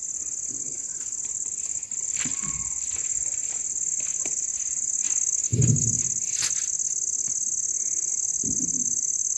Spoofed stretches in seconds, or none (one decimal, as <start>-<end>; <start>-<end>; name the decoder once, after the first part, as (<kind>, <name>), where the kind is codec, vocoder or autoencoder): none